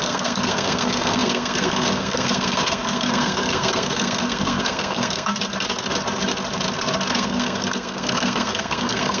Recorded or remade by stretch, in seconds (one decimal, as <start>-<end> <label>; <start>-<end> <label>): 0.0-5.3 remade; 5.3-7.1 recorded; 7.1-9.2 remade